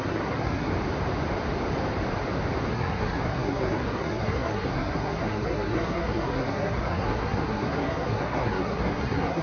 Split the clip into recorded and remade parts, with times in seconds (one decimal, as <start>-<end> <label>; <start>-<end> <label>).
0.0-0.7 remade; 0.7-2.7 recorded; 2.7-9.4 remade